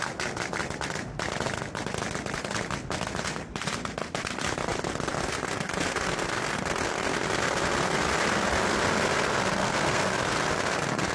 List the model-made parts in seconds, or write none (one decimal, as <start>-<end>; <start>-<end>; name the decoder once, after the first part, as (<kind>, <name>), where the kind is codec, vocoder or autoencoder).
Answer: 9.6-10.1 (codec, SNAC)